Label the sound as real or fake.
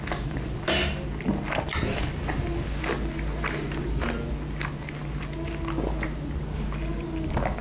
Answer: real